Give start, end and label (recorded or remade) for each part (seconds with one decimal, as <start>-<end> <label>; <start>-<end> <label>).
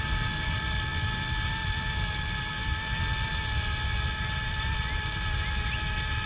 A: 0.0-6.3 recorded